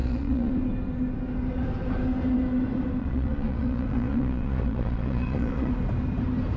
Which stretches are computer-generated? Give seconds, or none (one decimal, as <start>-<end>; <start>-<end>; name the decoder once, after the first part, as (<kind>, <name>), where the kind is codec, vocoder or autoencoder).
0.0-0.5 (vocoder, Vocos); 3.0-5.7

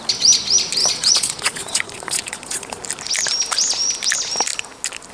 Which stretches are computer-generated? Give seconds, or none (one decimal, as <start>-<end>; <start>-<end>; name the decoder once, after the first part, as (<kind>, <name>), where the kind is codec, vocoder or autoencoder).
0.8-2.8 (vocoder, Vocos)

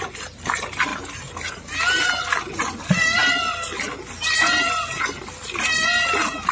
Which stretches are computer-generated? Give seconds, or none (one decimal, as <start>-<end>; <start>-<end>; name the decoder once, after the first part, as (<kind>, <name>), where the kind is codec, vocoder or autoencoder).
none